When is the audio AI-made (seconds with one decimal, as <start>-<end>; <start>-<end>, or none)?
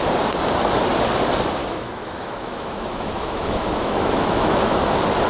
1.6-4.8